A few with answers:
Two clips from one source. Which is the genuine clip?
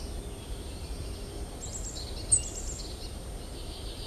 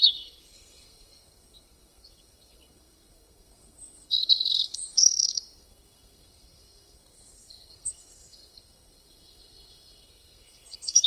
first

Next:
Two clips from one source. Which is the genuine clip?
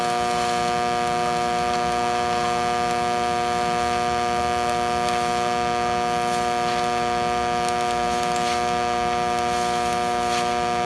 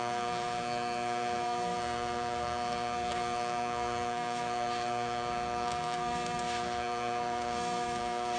first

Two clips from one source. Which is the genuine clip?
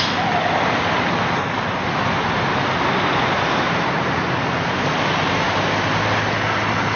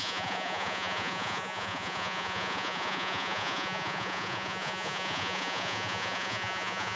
first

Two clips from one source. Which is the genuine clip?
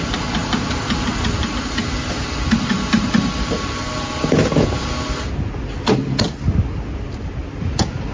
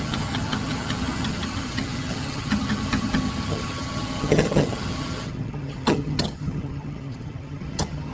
first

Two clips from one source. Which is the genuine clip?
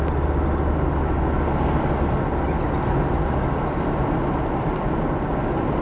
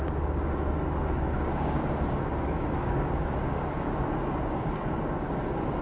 first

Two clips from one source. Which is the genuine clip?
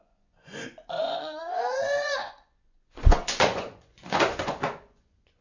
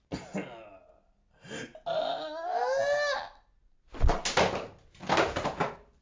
second